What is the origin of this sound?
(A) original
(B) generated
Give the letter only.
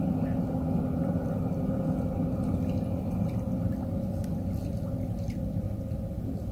A